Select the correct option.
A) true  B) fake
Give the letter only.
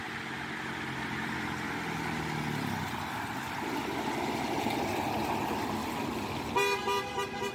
A